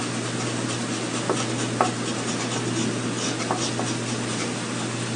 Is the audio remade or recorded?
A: recorded